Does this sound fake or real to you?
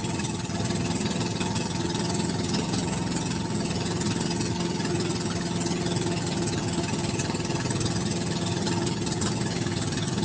fake